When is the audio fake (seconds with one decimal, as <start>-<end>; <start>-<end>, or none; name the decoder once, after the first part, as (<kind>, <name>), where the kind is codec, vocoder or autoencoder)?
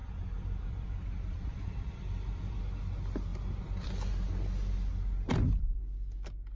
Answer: 0.0-2.6 (vocoder, BigVGAN v2)